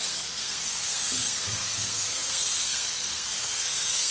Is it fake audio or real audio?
fake